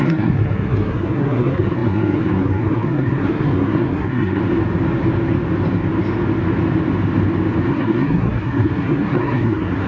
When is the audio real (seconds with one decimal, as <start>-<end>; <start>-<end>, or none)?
4.4-7.7